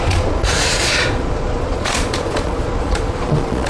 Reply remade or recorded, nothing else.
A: remade